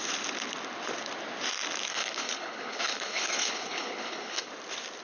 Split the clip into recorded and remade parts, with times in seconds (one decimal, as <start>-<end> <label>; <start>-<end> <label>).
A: 0.0-1.9 recorded; 1.9-4.5 remade; 4.5-5.0 recorded